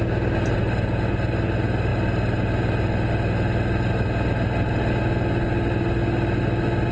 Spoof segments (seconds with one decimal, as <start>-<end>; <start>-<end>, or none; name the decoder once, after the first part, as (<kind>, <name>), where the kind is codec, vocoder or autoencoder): none